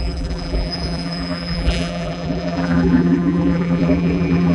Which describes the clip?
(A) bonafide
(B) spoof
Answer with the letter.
B